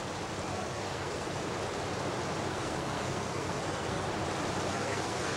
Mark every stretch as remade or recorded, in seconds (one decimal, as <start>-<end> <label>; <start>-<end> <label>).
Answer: 0.0-0.5 recorded; 0.5-1.4 remade; 1.4-2.5 recorded; 2.5-4.1 remade; 4.1-4.7 recorded; 4.7-5.4 remade